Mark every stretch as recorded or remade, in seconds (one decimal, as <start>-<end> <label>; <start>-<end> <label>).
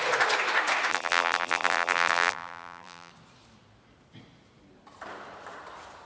0.0-0.9 recorded; 0.9-3.1 remade; 3.1-6.1 recorded